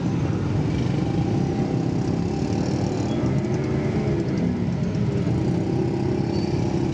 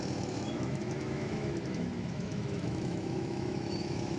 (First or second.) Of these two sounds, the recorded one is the first